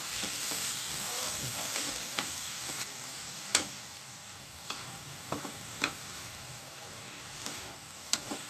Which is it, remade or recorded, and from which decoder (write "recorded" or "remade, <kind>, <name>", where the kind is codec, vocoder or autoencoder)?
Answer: remade, codec, DAC